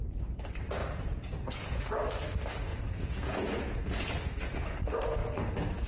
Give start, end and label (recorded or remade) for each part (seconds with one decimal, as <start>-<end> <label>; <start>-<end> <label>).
0.0-0.8 recorded; 0.8-1.9 remade; 1.9-2.7 recorded; 2.7-4.1 remade; 4.1-5.9 recorded